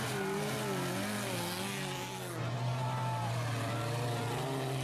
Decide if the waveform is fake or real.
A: real